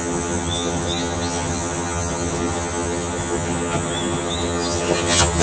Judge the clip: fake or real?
fake